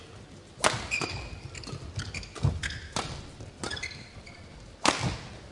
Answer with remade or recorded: recorded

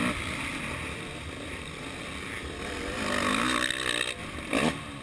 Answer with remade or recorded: recorded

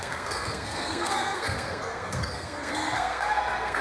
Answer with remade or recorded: remade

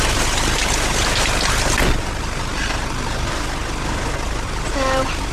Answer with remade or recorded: recorded